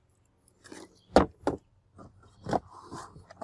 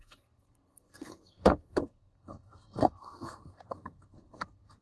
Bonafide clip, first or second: first